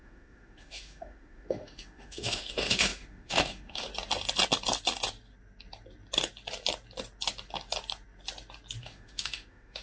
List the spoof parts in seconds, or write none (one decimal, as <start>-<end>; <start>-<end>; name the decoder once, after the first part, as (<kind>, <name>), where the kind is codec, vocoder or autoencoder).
0.0-3.9 (autoencoder, DAC-VAE); 8.8-9.8